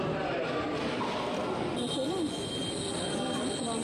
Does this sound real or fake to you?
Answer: real